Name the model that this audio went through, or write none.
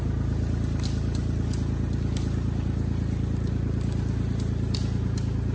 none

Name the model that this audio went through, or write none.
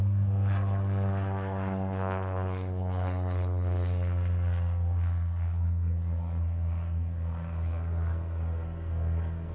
codec, SNAC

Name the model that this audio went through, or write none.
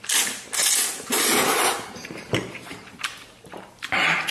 vocoder, BigVGAN v2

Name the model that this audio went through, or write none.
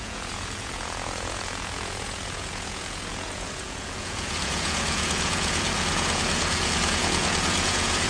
vocoder, Vocos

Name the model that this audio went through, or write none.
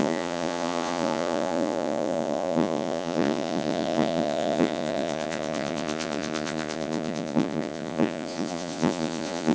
vocoder, Vocos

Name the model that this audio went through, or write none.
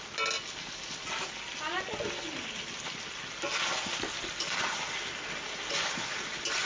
none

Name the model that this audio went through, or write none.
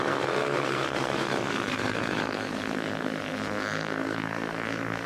codec, SNAC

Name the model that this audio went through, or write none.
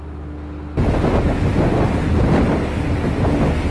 none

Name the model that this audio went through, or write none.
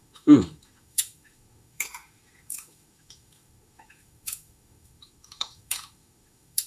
autoencoder, DAC-VAE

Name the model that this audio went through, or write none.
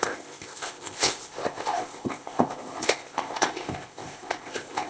codec, ZipCodec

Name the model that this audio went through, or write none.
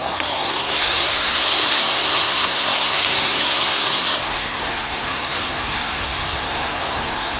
codec, SNAC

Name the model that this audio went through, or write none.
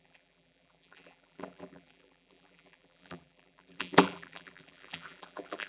vocoder, BigVGAN v2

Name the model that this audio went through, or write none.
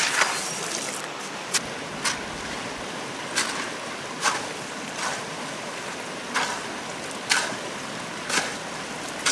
none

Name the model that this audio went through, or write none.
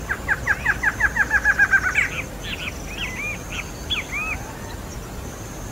none